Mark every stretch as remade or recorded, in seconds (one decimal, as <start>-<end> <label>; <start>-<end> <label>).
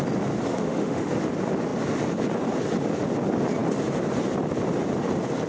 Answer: 0.0-0.5 recorded; 0.5-1.1 remade; 1.1-5.5 recorded